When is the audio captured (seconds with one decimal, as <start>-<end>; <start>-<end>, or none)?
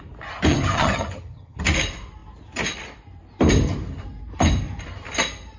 0.0-0.5; 1.6-5.6